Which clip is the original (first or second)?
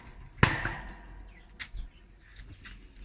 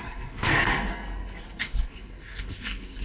first